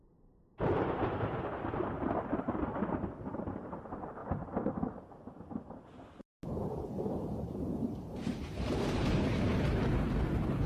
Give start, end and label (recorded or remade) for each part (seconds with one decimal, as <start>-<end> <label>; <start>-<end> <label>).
0.0-4.2 remade; 4.2-6.9 recorded; 6.9-9.5 remade; 9.5-10.7 recorded